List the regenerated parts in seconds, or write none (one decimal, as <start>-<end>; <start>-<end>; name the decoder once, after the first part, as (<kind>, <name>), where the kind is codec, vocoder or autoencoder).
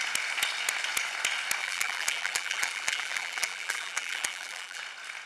1.6-4.8 (vocoder, BigVGAN v2)